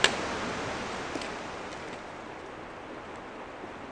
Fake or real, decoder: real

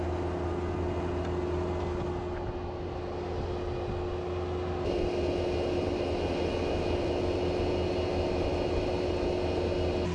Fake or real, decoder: real